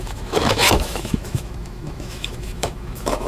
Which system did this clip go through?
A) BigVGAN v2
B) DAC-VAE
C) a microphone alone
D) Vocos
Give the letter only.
B